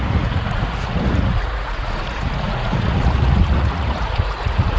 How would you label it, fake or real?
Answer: fake